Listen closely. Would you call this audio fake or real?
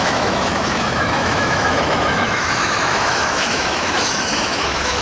fake